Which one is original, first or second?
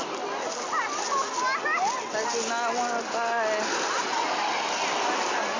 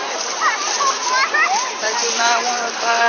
first